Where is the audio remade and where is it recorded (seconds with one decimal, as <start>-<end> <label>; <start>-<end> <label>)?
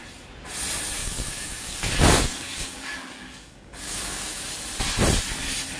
0.0-1.0 recorded; 1.0-4.5 remade; 4.5-5.8 recorded